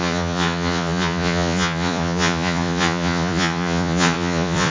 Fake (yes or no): yes